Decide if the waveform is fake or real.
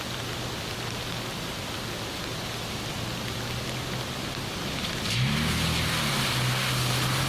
real